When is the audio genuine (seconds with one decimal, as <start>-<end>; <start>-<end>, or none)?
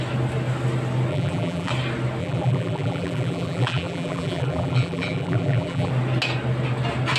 0.0-1.1; 1.7-2.2; 5.9-7.2